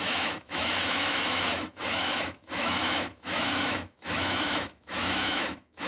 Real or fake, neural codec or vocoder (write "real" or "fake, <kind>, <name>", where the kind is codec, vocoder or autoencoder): fake, autoencoder, DAC-VAE